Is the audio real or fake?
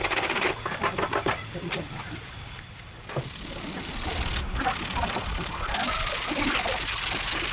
real